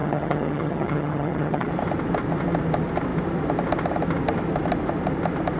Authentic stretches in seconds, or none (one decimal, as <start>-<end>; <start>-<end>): 1.7-5.6